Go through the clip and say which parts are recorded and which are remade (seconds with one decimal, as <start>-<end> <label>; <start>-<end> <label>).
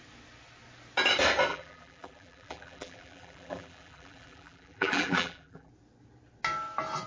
0.0-1.5 recorded; 1.5-5.7 remade; 5.7-7.1 recorded